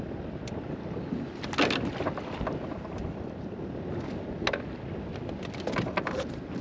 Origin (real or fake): real